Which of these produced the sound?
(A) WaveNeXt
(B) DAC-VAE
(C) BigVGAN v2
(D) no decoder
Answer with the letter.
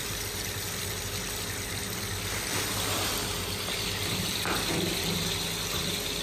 D